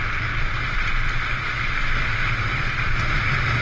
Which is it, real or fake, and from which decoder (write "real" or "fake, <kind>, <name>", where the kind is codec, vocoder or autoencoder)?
real